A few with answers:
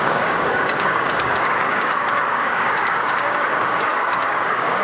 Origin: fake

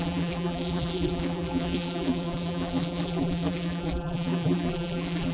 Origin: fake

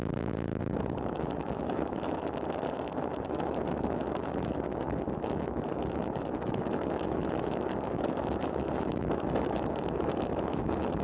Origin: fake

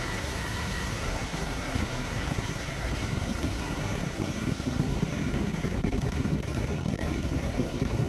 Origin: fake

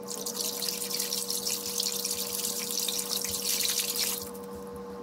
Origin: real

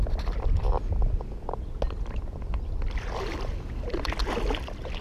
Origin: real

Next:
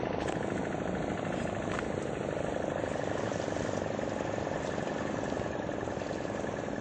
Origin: real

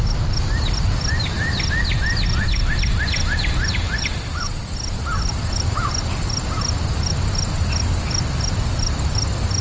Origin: real